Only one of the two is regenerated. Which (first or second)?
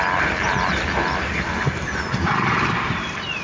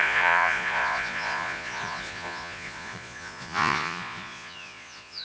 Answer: second